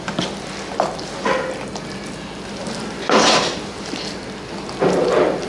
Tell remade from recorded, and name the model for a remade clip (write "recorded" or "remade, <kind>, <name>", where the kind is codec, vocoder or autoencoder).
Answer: recorded